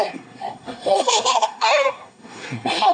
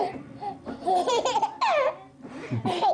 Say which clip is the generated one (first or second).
first